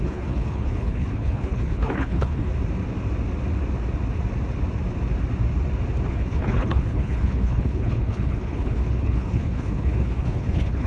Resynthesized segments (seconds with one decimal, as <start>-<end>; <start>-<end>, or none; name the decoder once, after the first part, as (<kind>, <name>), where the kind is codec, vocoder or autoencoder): 0.0-2.5 (codec, HILCodec); 6.1-10.9